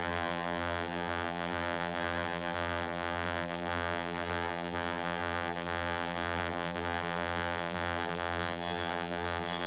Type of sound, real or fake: fake